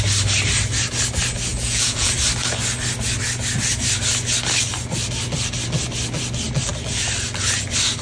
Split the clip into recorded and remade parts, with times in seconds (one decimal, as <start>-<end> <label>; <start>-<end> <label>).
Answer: 0.0-1.5 recorded; 1.5-2.1 remade; 2.1-8.0 recorded